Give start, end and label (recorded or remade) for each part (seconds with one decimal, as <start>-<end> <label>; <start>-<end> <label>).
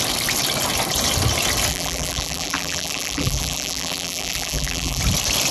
0.0-1.7 recorded; 1.7-5.0 remade; 5.0-5.5 recorded